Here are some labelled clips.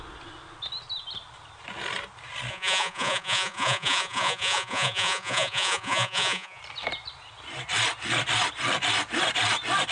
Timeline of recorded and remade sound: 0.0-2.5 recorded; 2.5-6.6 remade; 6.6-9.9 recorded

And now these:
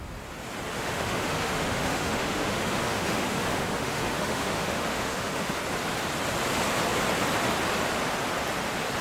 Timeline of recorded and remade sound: 0.0-0.7 recorded; 0.7-5.6 remade; 5.6-9.0 recorded

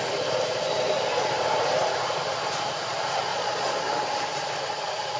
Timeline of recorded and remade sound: 0.0-3.3 recorded; 3.3-3.8 remade; 3.8-5.2 recorded

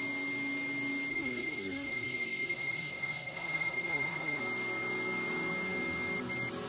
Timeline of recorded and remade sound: 0.0-1.1 recorded; 1.1-4.4 remade; 4.4-6.7 recorded

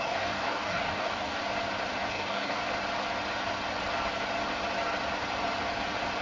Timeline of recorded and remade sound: 0.0-1.4 remade; 1.4-2.1 recorded; 2.1-2.6 remade; 2.6-6.2 recorded

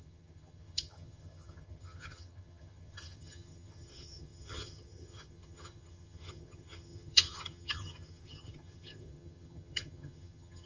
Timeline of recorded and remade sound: 0.0-10.7 remade